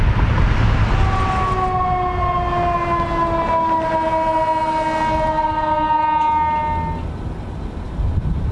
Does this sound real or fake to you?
real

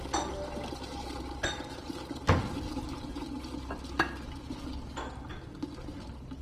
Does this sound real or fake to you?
real